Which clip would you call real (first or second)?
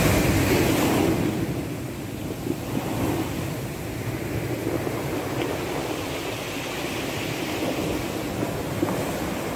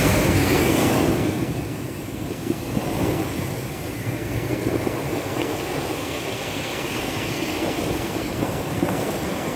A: first